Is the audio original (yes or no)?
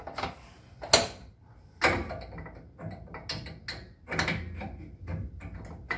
yes